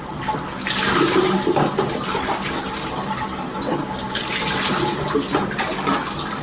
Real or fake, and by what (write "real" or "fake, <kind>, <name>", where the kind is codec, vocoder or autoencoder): real